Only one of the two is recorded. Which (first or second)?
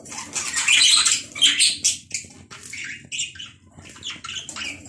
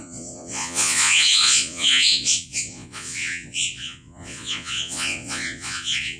first